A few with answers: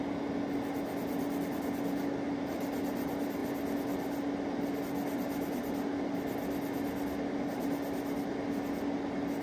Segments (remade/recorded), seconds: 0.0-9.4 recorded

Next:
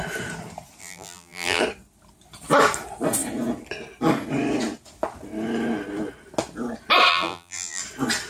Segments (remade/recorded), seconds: 0.0-0.8 recorded; 0.8-1.6 remade; 1.6-7.1 recorded; 7.1-7.8 remade; 7.8-8.3 recorded

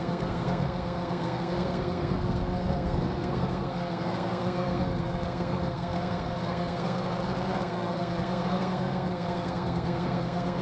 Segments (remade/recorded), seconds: 0.0-10.6 remade

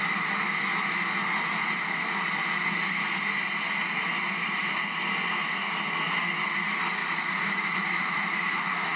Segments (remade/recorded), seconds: 0.0-7.0 recorded; 7.0-9.0 remade